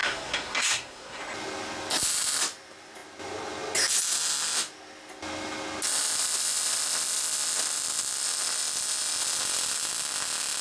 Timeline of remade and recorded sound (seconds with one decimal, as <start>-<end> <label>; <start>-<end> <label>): 0.0-1.2 remade; 1.2-10.6 recorded

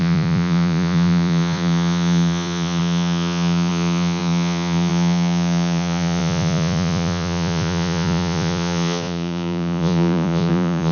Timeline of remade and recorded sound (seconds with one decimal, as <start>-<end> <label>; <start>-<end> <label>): 0.0-10.9 remade

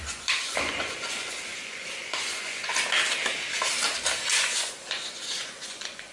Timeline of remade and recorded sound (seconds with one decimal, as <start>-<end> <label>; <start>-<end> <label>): 0.0-2.7 remade; 2.7-4.3 recorded; 4.3-6.1 remade

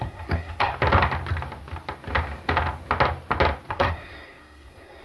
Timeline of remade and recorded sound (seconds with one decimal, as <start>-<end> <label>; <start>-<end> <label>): 0.0-0.7 remade; 0.7-3.7 recorded; 3.7-5.0 remade

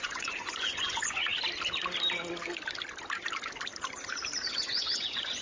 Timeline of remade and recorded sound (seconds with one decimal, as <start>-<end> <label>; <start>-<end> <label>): 0.0-1.3 remade; 1.3-4.5 recorded; 4.5-5.4 remade

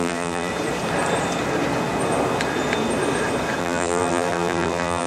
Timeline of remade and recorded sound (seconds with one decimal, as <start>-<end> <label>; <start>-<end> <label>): 0.0-0.5 remade; 0.5-3.6 recorded; 3.6-5.1 remade

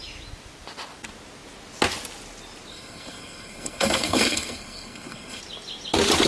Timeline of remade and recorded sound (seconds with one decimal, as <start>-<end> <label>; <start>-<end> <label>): 0.0-2.7 recorded; 2.7-5.4 remade; 5.4-6.3 recorded